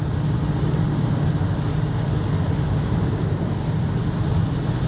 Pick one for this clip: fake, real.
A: real